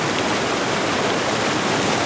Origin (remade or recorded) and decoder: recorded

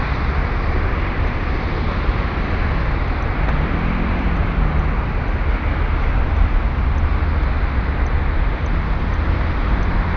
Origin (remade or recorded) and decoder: recorded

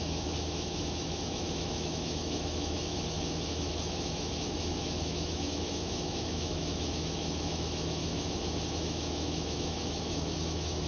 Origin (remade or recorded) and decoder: remade, autoencoder, DAC-VAE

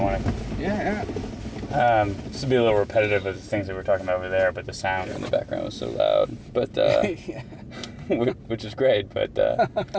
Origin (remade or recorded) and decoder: recorded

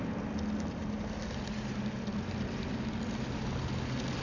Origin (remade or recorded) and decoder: recorded